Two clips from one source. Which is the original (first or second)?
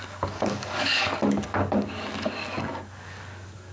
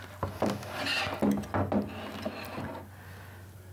second